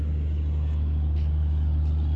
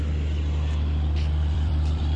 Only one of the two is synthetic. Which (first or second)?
second